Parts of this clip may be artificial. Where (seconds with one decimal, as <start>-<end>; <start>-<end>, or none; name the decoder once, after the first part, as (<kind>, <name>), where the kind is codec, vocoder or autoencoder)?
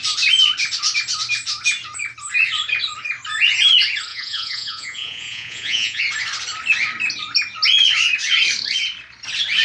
4.1-6.0 (vocoder, Vocos)